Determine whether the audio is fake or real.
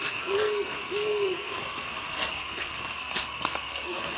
fake